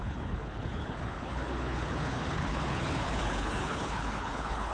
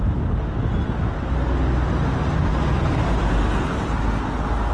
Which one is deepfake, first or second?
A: first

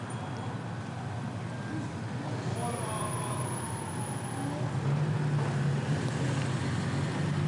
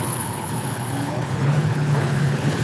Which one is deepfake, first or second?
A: second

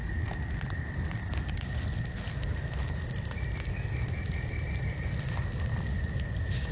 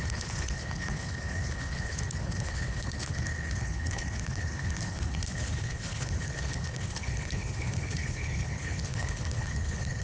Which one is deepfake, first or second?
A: second